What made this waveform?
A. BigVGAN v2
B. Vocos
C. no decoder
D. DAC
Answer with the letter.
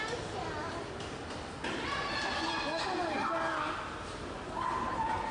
C